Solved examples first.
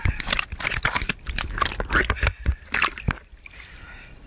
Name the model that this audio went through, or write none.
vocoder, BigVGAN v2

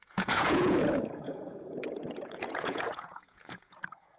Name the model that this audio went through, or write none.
vocoder, Vocos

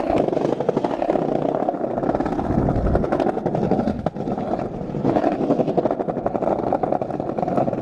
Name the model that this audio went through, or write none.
none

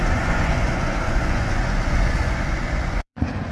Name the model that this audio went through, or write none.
vocoder, Vocos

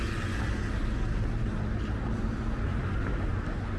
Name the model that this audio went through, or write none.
none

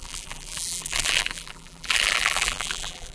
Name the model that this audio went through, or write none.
vocoder, BigVGAN v2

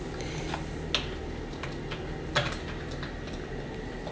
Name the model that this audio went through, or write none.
none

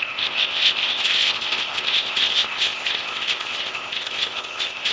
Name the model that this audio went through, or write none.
codec, ZipCodec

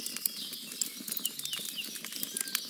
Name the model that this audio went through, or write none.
none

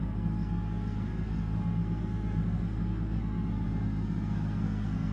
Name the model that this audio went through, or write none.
codec, SNAC